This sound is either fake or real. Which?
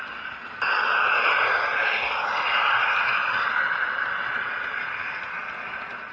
real